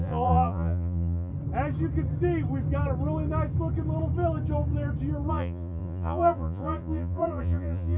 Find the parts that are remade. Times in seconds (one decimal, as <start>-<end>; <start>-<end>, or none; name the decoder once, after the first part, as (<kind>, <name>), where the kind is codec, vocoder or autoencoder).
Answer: 0.0-1.3 (vocoder, Vocos); 5.3-8.0